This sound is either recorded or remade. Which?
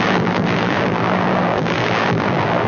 remade